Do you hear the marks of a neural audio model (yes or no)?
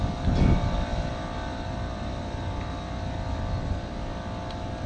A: no